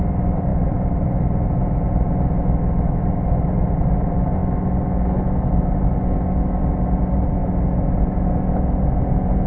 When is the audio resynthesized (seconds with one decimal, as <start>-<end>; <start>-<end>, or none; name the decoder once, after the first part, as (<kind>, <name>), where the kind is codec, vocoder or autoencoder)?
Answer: 0.5-1.6 (vocoder, BigVGAN v2); 7.4-8.3